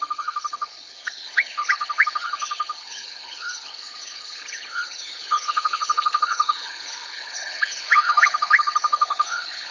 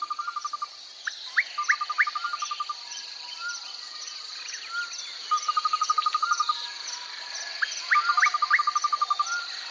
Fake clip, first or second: first